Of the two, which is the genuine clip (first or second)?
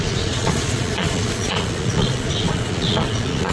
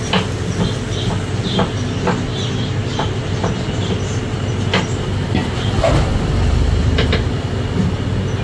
second